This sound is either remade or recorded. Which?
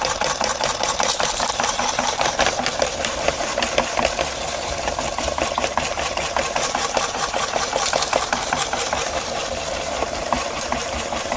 remade